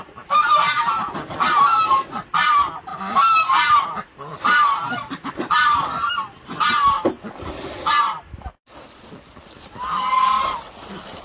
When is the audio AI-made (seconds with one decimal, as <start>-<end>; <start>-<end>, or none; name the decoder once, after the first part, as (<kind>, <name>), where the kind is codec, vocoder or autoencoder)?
none